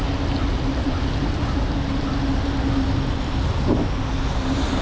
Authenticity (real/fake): real